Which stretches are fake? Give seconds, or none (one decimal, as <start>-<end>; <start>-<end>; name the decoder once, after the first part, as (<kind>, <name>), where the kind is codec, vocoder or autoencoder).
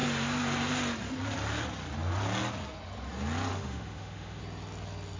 3.5-4.4 (autoencoder, DAC-VAE)